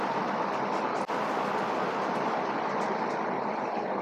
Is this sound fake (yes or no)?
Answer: no